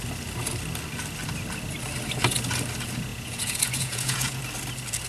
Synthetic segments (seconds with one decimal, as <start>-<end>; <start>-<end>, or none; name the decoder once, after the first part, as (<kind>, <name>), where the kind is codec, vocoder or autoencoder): 3.1-4.4 (vocoder, Vocos)